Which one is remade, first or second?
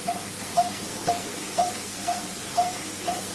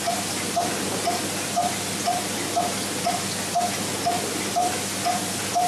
first